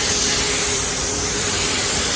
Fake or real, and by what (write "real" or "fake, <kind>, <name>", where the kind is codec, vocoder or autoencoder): fake, vocoder, BigVGAN v2